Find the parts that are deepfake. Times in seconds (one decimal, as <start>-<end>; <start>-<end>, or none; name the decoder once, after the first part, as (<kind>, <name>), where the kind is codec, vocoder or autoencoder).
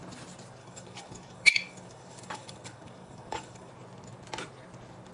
0.6-3.7 (codec, DAC)